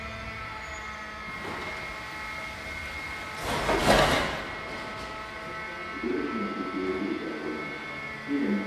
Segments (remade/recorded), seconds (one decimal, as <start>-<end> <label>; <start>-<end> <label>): 0.0-8.7 recorded

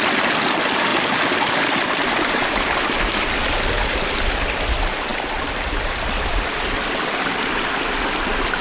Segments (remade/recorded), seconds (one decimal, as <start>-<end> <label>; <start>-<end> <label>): 0.0-8.6 recorded

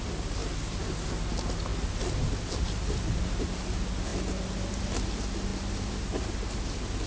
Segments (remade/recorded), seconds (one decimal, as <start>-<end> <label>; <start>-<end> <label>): 0.0-7.1 recorded

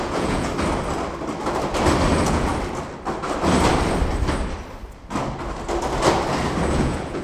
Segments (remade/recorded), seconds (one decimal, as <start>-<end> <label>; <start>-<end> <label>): 0.0-0.5 remade; 0.5-2.1 recorded; 2.1-2.5 remade; 2.5-6.6 recorded; 6.6-7.2 remade

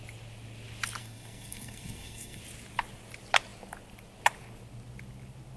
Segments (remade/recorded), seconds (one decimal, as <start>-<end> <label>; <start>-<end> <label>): 0.0-1.0 recorded; 1.0-2.4 remade; 2.4-5.6 recorded

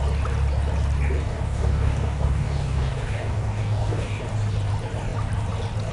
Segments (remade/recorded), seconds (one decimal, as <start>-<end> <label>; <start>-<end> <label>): 0.0-1.3 recorded; 1.3-4.2 remade; 4.2-5.9 recorded

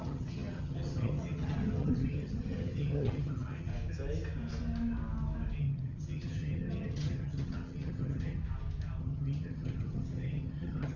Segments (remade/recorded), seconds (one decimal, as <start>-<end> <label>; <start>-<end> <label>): 0.0-3.7 remade; 3.7-5.6 recorded; 5.6-8.4 remade; 8.4-9.0 recorded; 9.0-11.0 remade

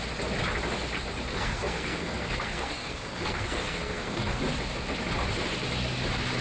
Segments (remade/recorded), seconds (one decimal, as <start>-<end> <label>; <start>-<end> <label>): 0.0-1.3 recorded; 1.3-4.4 remade; 4.4-6.4 recorded